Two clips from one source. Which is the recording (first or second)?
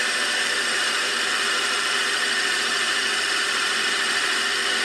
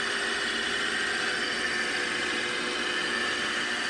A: second